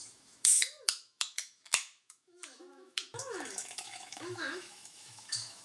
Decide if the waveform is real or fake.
fake